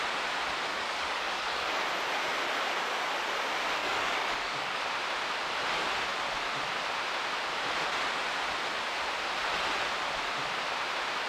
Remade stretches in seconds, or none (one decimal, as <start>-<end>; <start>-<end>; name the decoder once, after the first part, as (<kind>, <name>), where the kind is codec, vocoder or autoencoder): 0.7-1.8 (codec, DAC); 3.8-4.8